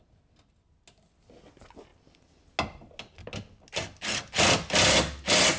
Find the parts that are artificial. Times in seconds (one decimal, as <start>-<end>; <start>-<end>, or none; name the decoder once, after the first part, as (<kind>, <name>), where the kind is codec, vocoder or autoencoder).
none